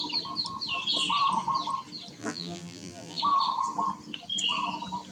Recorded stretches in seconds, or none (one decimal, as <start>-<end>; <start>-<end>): 0.0-2.2; 3.2-5.1